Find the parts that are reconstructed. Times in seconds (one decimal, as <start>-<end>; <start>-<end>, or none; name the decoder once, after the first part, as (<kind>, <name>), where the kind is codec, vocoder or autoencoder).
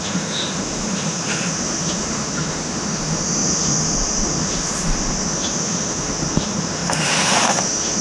0.0-8.0 (autoencoder, DAC-VAE)